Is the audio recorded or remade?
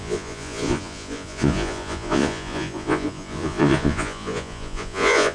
remade